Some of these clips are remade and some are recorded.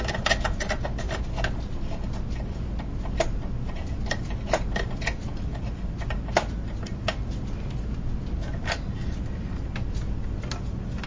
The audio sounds recorded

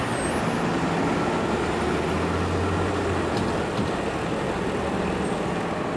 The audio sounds recorded